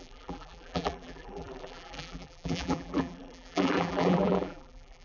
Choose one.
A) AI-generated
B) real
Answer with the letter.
A